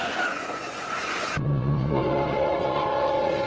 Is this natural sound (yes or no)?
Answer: no